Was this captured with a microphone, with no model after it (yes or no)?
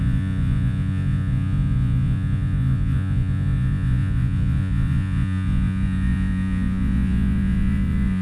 no